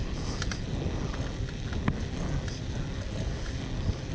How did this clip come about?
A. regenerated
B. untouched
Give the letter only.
B